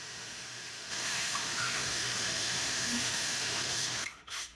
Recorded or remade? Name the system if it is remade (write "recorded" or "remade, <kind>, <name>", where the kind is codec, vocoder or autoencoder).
remade, autoencoder, DAC-VAE